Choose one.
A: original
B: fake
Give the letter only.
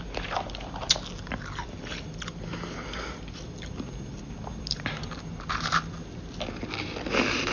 A